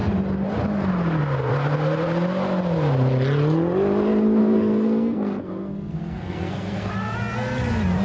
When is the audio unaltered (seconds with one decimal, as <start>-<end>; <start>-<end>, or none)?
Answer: 0.0-4.4; 6.9-8.0